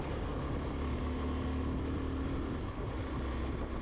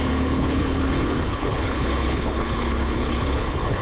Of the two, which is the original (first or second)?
first